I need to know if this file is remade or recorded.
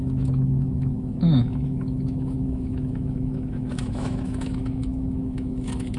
remade